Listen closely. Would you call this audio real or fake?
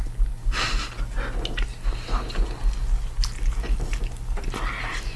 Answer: real